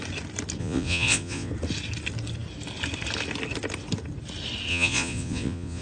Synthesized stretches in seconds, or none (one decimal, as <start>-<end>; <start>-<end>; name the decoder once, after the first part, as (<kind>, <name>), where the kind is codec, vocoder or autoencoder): 0.6-1.5 (vocoder, Vocos); 4.7-5.8